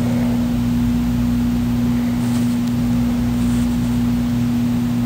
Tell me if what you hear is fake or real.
real